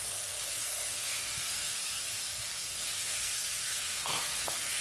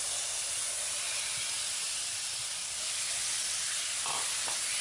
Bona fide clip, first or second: second